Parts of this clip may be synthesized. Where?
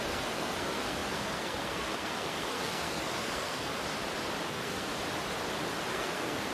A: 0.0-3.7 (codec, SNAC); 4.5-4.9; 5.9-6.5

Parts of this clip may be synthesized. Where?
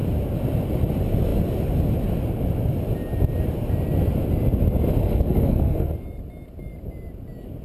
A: 5.0-5.9 (codec, SNAC)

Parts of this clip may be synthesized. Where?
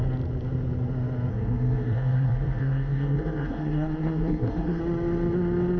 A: 1.3-4.8 (codec, SNAC)